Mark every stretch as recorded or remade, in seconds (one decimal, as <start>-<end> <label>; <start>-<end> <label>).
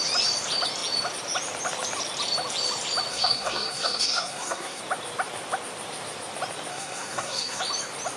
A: 0.0-3.1 recorded; 3.1-4.8 remade; 4.8-6.7 recorded; 6.7-7.6 remade; 7.6-8.2 recorded